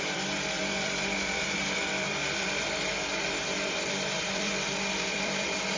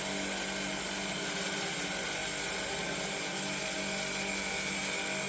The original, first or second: second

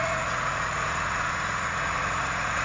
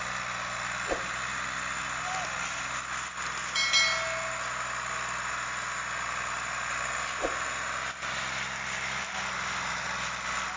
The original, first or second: second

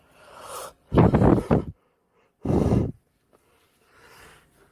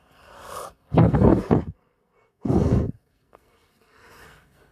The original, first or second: first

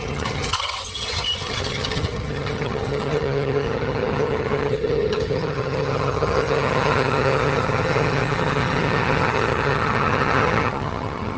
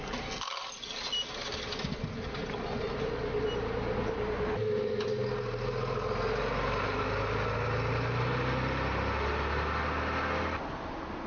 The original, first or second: second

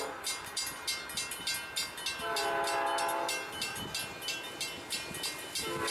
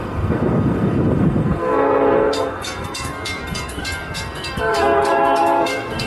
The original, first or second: first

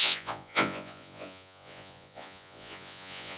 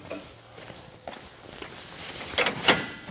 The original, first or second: second